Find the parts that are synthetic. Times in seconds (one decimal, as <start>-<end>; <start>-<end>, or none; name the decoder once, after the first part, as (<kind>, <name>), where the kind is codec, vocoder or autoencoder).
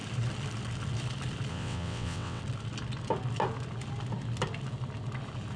1.5-2.4 (vocoder, WaveNeXt)